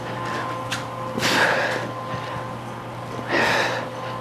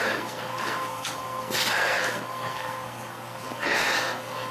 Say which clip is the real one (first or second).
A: first